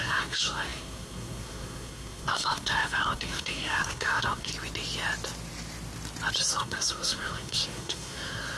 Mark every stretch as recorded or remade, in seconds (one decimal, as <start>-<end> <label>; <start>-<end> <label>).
0.0-4.5 remade; 4.5-6.5 recorded; 6.5-8.6 remade